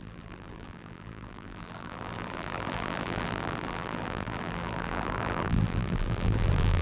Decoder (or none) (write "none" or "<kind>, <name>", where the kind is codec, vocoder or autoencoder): vocoder, BigVGAN v2